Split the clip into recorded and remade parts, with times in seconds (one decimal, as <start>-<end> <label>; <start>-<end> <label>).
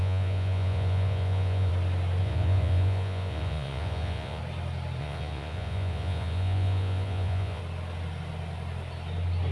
0.0-1.7 remade; 1.7-2.2 recorded; 2.2-4.4 remade; 4.4-5.0 recorded; 5.0-7.6 remade; 7.6-9.5 recorded